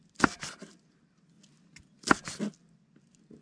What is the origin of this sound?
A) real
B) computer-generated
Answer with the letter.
A